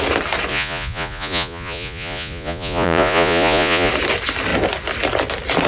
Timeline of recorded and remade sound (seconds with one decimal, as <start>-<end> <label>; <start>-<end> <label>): 0.0-0.5 recorded; 0.5-3.9 remade; 3.9-5.7 recorded